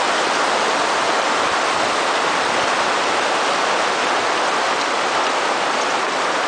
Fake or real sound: real